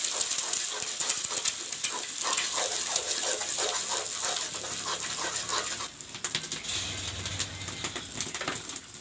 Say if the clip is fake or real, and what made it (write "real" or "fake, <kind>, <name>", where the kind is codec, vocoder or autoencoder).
real